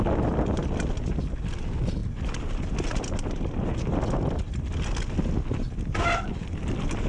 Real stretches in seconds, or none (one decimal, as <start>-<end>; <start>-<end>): 0.0-7.1